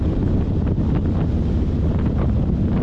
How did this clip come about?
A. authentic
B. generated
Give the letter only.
A